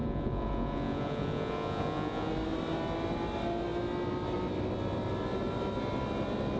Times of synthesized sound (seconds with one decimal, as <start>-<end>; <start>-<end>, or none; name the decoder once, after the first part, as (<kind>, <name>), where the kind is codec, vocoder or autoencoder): 0.0-2.3 (vocoder, Vocos)